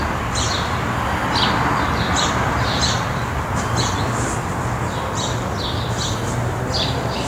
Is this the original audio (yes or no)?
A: yes